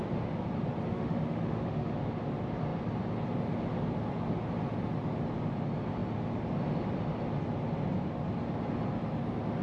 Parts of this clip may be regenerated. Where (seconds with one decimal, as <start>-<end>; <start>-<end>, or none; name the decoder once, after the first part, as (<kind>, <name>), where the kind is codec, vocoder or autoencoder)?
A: 0.9-1.9 (autoencoder, DAC-VAE)